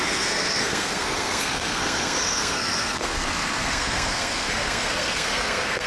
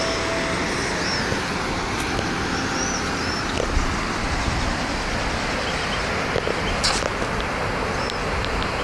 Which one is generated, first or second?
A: first